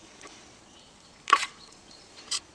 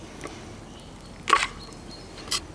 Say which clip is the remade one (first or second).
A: first